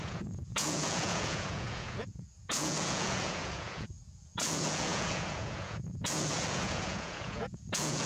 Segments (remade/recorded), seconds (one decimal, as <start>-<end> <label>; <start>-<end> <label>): 0.0-8.1 remade